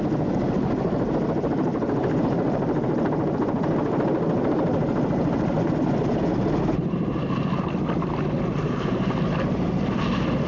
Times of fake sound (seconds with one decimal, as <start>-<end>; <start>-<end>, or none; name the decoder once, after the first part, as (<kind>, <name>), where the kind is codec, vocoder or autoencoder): none